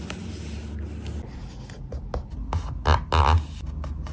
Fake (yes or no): no